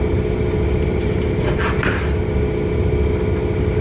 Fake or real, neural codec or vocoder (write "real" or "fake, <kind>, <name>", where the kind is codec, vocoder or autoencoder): real